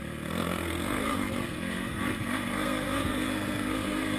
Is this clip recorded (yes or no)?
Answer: no